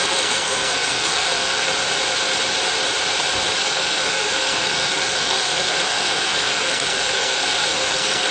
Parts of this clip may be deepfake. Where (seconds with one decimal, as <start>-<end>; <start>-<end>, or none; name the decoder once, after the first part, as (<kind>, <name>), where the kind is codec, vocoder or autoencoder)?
0.0-1.7 (codec, SNAC); 3.6-8.3